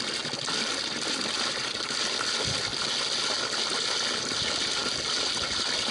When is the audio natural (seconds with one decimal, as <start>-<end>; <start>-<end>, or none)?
0.0-5.9